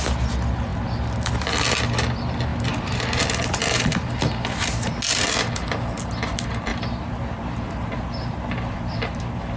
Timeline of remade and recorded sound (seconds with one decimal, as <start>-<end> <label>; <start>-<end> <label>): 0.0-6.7 recorded; 6.7-9.2 remade; 9.2-9.6 recorded

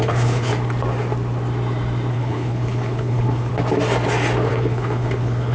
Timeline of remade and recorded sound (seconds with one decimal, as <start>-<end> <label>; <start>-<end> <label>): 0.0-0.5 remade; 0.5-2.1 recorded; 2.1-3.5 remade; 3.5-4.5 recorded; 4.5-5.5 remade

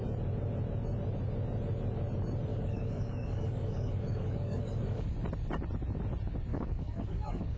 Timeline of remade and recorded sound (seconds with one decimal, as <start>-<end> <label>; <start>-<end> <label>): 0.0-2.5 recorded; 2.5-5.1 remade; 5.1-6.5 recorded; 6.5-7.6 remade

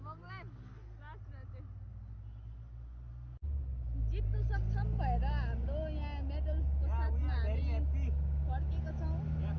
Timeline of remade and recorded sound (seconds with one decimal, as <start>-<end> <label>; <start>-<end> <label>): 0.0-9.6 recorded